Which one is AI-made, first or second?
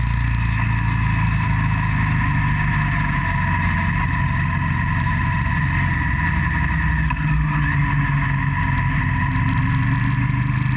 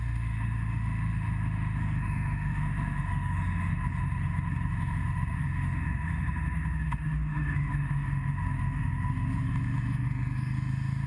second